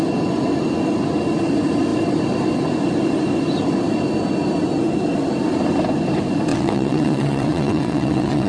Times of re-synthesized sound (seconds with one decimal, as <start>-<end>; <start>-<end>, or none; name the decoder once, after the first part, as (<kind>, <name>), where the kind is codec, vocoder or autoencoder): 6.5-8.5 (vocoder, WaveNeXt)